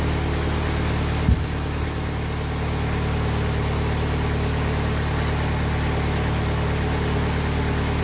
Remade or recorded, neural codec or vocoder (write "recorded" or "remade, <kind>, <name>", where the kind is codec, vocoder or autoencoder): recorded